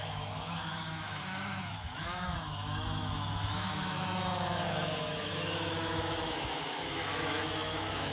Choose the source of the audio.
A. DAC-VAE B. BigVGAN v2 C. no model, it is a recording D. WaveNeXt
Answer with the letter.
A